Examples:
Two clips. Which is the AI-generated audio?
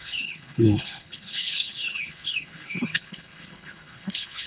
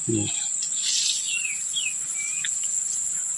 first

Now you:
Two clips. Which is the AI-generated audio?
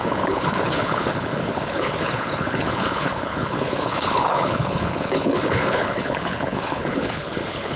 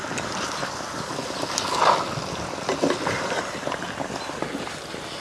first